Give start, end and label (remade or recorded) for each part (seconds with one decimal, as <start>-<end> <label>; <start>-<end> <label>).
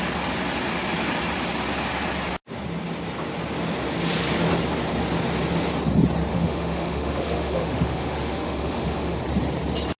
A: 0.0-6.3 recorded; 6.3-9.2 remade; 9.2-10.0 recorded